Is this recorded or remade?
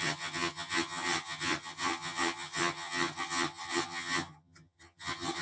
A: remade